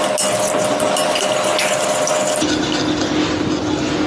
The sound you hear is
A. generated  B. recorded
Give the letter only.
B